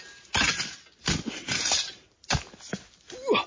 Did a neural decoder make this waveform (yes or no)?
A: no